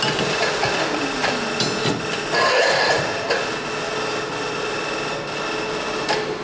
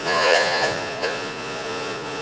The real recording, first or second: first